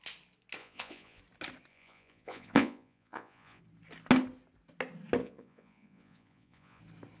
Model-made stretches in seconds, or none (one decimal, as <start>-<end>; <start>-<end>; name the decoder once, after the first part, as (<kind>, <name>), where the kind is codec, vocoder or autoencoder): 0.6-1.2 (vocoder, Vocos); 1.7-3.6; 5.2-6.8